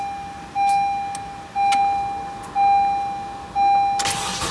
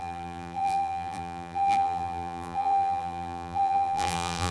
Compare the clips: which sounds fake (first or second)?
second